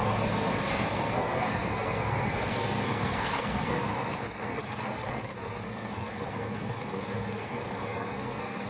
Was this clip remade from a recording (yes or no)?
yes